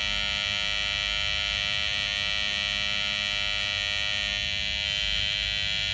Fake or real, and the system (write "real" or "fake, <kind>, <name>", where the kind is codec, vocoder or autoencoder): real